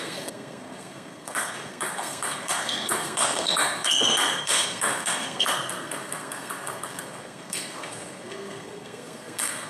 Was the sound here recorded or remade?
remade